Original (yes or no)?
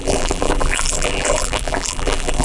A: no